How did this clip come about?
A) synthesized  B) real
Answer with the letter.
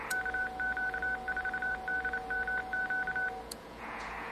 A